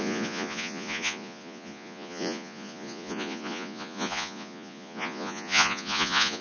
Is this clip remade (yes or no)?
yes